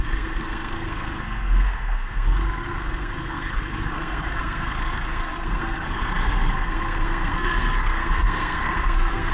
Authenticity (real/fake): fake